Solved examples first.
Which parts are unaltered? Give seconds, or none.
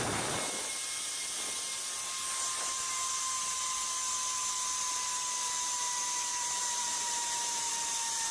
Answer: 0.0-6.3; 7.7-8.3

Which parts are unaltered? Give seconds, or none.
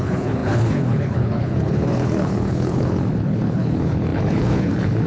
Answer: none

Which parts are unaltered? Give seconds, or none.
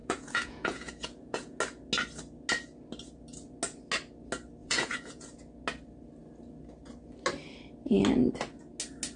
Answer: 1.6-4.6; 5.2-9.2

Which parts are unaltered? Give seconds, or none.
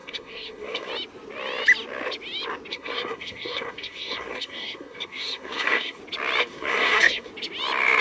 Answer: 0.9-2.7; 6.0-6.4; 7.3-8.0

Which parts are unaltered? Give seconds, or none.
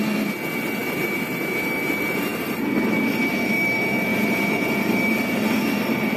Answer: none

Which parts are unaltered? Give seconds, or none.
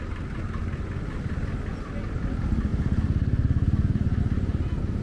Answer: 0.0-2.7; 4.2-5.0